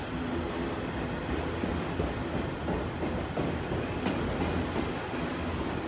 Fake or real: real